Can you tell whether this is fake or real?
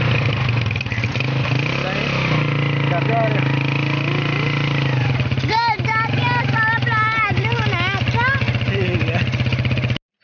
real